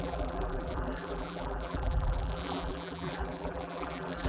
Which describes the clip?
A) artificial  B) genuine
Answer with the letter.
A